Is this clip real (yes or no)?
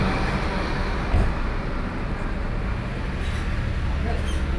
yes